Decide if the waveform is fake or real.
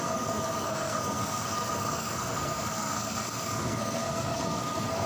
fake